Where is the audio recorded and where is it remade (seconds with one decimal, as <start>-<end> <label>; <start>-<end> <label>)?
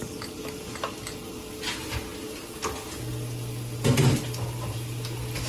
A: 0.0-5.5 recorded